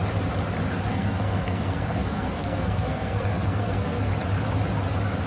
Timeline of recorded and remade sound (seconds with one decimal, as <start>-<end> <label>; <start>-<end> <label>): 0.0-0.9 recorded; 0.9-4.1 remade; 4.1-5.3 recorded